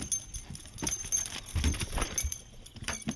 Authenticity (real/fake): real